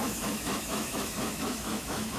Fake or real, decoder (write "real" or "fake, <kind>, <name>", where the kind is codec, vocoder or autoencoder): fake, autoencoder, DAC-VAE